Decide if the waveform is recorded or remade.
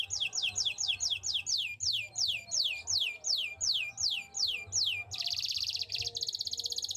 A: recorded